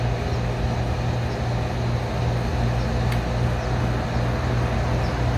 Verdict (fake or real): real